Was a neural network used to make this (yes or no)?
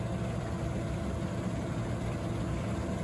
no